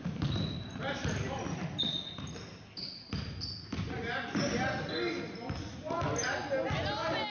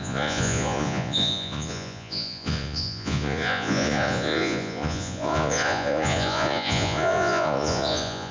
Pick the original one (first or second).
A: first